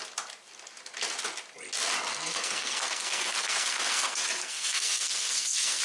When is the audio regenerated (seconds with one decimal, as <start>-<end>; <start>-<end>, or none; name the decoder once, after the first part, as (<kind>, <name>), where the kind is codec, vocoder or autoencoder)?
2.1-5.8 (codec, SNAC)